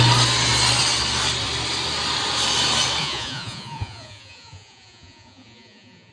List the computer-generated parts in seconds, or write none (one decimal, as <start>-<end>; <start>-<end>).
3.0-6.1